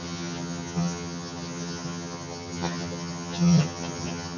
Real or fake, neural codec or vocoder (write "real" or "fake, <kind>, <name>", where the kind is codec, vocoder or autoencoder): fake, vocoder, HiFi-GAN